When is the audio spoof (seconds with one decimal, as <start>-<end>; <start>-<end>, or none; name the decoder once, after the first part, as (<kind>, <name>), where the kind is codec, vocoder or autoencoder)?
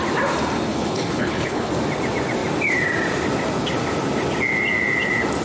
0.7-1.7 (codec, HILCodec)